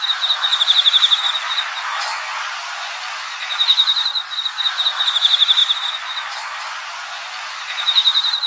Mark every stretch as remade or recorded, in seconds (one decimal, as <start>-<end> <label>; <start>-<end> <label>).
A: 0.0-8.5 recorded